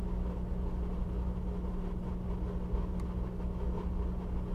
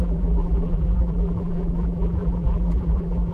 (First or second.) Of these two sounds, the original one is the first